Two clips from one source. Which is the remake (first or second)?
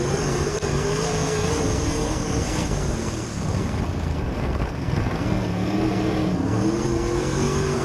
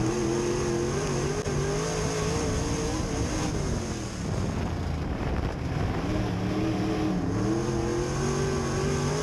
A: first